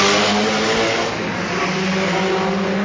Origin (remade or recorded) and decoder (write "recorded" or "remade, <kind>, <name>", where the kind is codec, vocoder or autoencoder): recorded